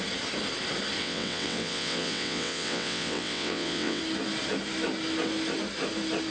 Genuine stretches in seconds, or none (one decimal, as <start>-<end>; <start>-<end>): 0.0-1.0; 4.0-6.3